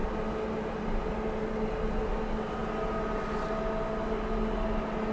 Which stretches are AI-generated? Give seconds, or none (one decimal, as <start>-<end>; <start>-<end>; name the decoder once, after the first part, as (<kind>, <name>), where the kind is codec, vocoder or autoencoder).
none